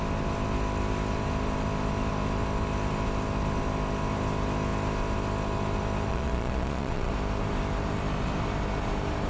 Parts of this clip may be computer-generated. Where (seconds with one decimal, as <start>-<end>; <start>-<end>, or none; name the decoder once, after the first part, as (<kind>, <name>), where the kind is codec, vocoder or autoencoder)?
6.1-7.1 (vocoder, Vocos)